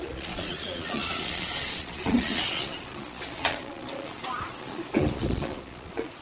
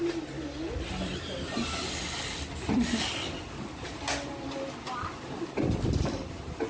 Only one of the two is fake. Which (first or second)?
first